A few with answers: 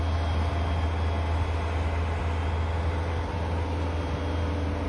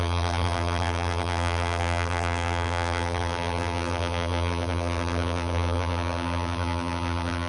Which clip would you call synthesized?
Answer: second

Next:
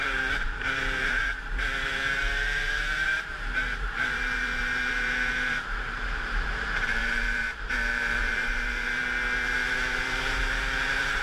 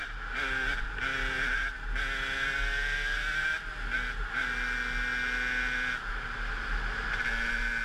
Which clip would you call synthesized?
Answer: first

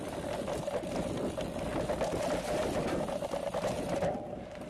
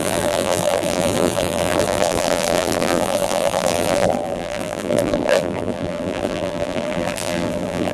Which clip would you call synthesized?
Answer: second